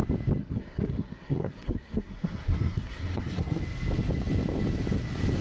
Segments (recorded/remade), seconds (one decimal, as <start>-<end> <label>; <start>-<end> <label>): 0.0-0.4 recorded; 0.4-3.6 remade; 3.6-5.4 recorded